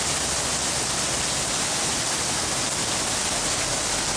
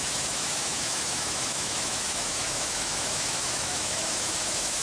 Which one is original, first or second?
first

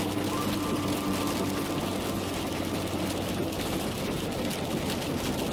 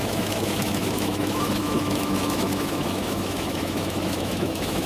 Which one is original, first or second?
first